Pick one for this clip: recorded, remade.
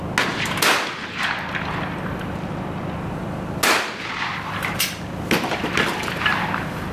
recorded